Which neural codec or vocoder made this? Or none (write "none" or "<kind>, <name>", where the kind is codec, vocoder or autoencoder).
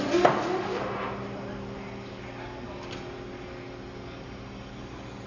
none